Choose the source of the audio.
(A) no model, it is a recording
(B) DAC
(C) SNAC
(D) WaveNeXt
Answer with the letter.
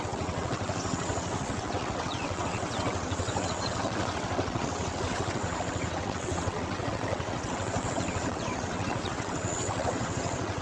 D